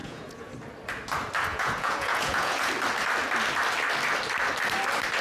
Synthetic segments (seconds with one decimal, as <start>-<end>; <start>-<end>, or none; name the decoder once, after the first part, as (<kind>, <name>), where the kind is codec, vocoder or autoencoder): 0.0-0.5 (vocoder, Vocos); 1.5-2.7